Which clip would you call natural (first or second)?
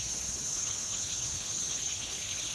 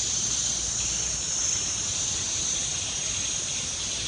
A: second